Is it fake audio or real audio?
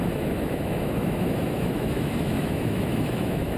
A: fake